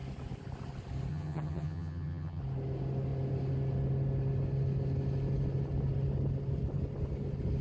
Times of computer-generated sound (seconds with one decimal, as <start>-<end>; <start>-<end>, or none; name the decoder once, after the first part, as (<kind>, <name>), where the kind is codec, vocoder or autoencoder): 1.1-2.4 (vocoder, HiFi-GAN)

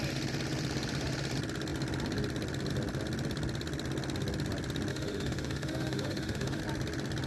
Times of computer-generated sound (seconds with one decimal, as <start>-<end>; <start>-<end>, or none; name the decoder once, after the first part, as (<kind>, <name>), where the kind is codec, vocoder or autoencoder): 4.9-6.6 (autoencoder, DAC-VAE)

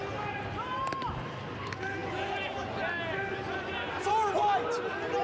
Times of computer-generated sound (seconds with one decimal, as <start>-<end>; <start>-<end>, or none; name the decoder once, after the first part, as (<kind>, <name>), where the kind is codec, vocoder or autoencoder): none

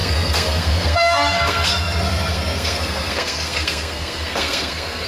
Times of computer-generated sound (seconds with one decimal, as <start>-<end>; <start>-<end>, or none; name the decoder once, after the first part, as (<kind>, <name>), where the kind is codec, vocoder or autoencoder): 0.0-5.1 (codec, SNAC)

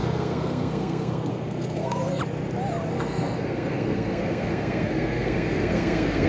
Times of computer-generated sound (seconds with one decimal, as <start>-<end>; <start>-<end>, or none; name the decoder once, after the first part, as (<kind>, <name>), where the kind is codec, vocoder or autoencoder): 0.0-2.2 (codec, SNAC); 2.9-6.3

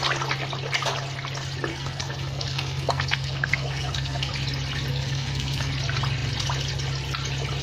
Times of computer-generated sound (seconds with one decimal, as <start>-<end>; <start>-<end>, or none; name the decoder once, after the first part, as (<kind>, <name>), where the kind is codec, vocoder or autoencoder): 1.7-4.3 (codec, SNAC); 4.9-5.7

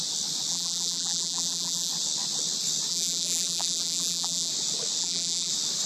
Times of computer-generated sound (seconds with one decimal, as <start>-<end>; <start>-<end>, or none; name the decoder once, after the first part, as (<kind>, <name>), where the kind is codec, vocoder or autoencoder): 0.5-1.9 (vocoder, BigVGAN v2); 2.9-4.5; 5.0-5.5